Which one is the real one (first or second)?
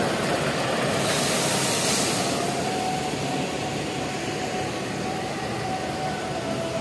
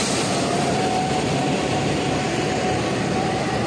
first